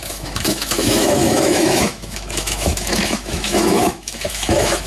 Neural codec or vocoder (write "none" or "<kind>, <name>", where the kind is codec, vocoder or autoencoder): autoencoder, DAC-VAE